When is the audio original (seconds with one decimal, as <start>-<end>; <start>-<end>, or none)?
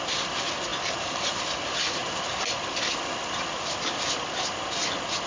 0.0-0.7; 1.6-2.0; 4.3-5.3